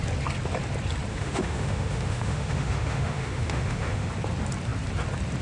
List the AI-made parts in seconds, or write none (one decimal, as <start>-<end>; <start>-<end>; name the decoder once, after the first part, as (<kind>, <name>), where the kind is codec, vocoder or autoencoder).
1.1-4.1 (autoencoder, DAC-VAE)